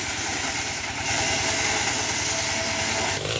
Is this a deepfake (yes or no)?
no